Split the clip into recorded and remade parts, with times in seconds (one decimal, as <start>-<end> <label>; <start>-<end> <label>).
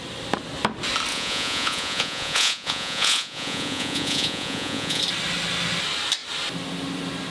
0.0-1.1 recorded; 1.1-5.0 remade; 5.0-7.3 recorded